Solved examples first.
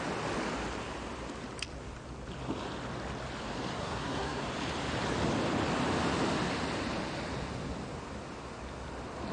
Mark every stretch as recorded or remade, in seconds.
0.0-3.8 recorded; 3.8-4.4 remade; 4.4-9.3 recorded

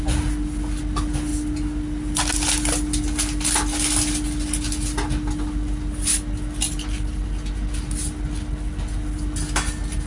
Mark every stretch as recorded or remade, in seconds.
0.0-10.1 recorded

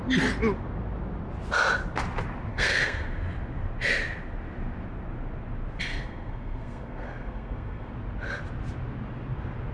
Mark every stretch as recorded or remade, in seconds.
0.0-2.5 recorded; 2.5-3.2 remade; 3.2-5.8 recorded; 5.8-7.9 remade; 7.9-9.7 recorded